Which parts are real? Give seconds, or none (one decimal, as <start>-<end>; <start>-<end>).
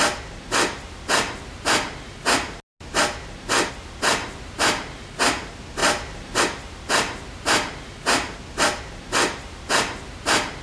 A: 0.0-10.6